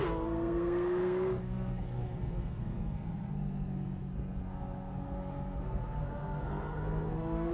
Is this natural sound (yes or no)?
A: no